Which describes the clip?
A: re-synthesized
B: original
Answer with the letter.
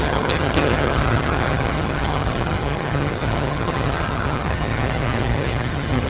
A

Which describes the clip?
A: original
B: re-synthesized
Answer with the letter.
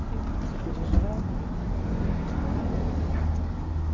A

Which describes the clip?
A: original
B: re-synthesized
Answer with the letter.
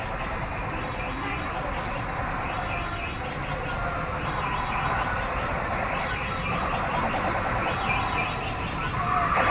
A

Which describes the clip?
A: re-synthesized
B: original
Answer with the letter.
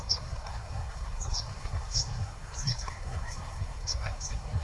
A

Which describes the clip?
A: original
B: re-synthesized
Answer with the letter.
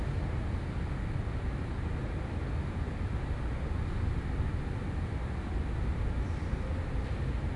A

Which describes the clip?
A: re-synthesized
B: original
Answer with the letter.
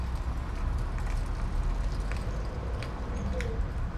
B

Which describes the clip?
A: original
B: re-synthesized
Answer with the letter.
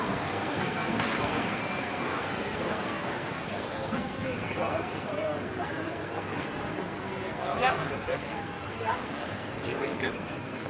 B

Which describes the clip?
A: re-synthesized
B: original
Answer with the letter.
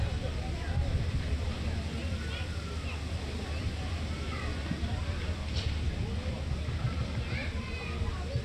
B